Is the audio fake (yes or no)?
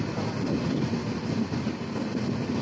no